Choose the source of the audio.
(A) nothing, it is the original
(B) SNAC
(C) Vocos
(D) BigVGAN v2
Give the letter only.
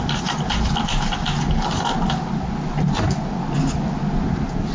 A